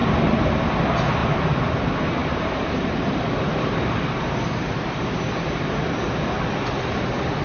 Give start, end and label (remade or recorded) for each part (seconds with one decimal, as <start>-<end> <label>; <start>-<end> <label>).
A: 0.0-0.5 remade; 0.5-1.2 recorded; 1.2-1.8 remade; 1.8-2.2 recorded; 2.2-6.1 remade; 6.1-7.4 recorded